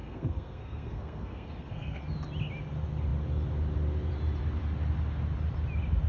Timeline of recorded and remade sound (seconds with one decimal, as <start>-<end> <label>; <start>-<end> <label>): 0.0-2.0 remade; 2.0-6.1 recorded